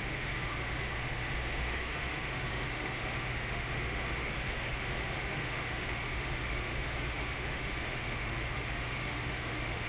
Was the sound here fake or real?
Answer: fake